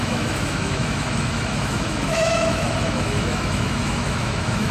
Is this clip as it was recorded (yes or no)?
no